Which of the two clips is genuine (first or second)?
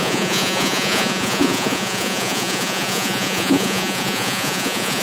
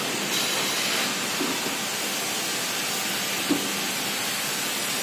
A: second